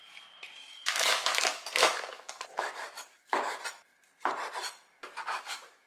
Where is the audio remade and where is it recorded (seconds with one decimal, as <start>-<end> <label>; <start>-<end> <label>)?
0.0-0.6 recorded; 0.6-3.6 remade; 3.6-5.0 recorded; 5.0-5.9 remade